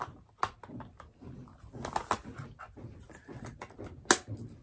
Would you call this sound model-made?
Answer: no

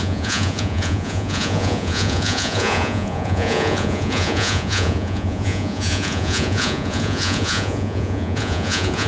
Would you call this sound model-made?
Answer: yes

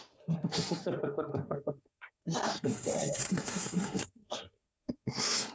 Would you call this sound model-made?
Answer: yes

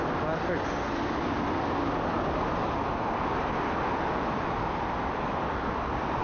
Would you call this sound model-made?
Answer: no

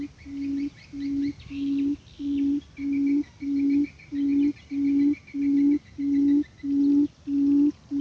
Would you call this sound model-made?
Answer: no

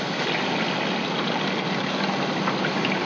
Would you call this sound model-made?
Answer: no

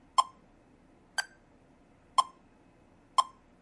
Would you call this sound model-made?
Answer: no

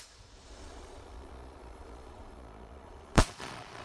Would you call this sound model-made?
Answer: yes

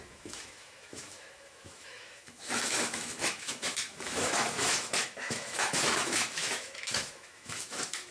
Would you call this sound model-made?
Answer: yes